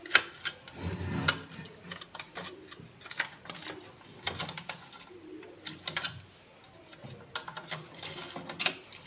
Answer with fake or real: real